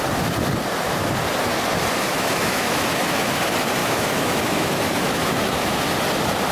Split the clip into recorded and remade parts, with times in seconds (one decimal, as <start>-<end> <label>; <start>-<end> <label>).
0.0-2.1 recorded; 2.1-3.2 remade; 3.2-3.8 recorded; 3.8-5.8 remade; 5.8-6.5 recorded

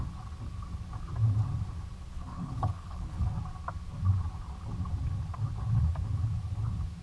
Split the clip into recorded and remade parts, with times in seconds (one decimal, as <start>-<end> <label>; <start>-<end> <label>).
0.0-2.1 recorded; 2.1-3.3 remade; 3.3-7.0 recorded

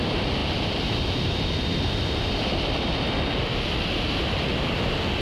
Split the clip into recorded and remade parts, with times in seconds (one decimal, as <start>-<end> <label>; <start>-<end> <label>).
0.0-5.2 recorded